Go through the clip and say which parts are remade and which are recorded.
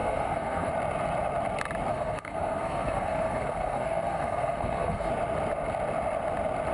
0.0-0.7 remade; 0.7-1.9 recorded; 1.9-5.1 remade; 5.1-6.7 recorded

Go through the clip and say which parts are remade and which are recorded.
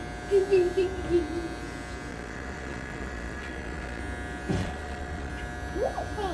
0.0-2.1 recorded; 2.1-4.0 remade; 4.0-4.6 recorded; 4.6-5.3 remade; 5.3-6.3 recorded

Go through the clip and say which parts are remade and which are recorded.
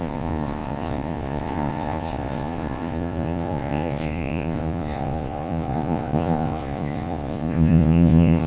0.0-8.5 remade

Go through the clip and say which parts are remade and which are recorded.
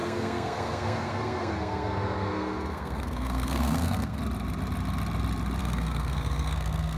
0.0-4.2 remade; 4.2-5.6 recorded; 5.6-7.0 remade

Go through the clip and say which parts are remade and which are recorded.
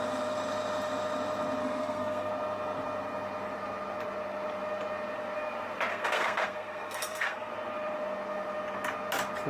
0.0-1.6 recorded; 1.6-2.3 remade; 2.3-5.9 recorded; 5.9-7.5 remade; 7.5-9.5 recorded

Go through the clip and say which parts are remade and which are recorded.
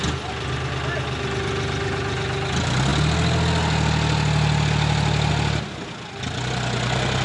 0.0-7.2 recorded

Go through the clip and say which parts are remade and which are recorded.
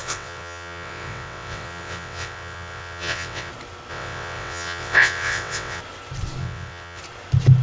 0.0-3.5 remade; 3.5-3.9 recorded; 3.9-5.8 remade; 5.8-6.4 recorded; 6.4-7.0 remade; 7.0-7.6 recorded